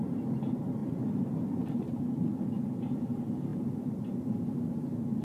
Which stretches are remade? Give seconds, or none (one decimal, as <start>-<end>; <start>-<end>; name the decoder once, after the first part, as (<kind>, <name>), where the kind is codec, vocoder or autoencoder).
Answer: 0.8-2.0 (vocoder, BigVGAN v2); 3.5-4.1

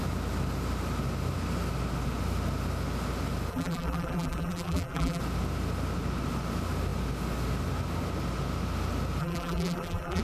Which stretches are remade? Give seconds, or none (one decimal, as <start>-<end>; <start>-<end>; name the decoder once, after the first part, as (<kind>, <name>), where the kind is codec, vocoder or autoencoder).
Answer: 3.5-5.2 (vocoder, BigVGAN v2); 9.2-10.2

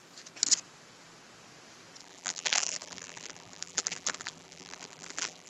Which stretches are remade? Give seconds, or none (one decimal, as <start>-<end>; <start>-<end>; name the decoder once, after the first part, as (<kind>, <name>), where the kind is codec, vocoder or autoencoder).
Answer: 2.0-5.5 (vocoder, BigVGAN v2)

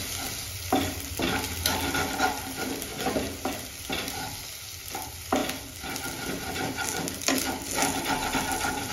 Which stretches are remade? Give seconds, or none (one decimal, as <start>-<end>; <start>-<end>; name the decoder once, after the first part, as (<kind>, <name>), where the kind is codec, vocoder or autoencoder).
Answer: none

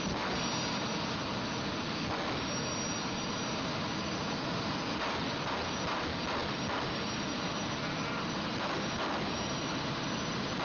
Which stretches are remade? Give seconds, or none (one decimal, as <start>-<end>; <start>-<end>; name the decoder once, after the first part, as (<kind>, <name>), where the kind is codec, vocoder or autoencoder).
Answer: none

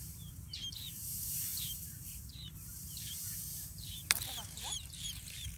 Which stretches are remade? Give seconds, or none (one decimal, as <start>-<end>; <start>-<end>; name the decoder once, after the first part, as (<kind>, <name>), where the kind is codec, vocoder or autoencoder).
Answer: 0.0-5.6 (vocoder, BigVGAN v2)

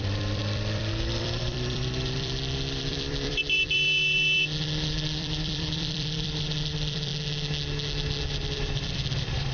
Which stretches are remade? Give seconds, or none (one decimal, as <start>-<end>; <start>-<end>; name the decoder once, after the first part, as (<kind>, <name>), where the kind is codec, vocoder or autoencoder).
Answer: 0.0-7.1 (vocoder, BigVGAN v2); 8.3-9.5

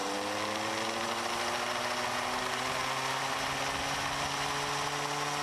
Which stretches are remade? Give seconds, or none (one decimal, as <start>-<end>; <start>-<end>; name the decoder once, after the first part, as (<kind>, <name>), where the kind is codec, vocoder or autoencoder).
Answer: none